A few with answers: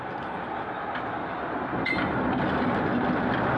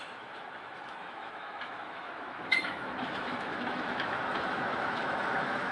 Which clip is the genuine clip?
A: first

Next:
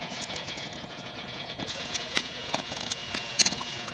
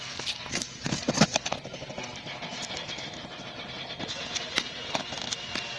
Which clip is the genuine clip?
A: second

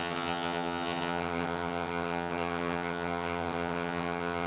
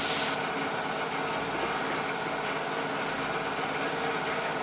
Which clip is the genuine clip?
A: second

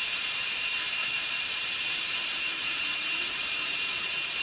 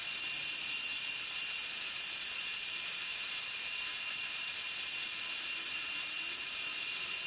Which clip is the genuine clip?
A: second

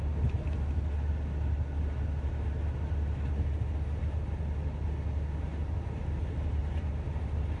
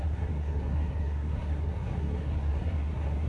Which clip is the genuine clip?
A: first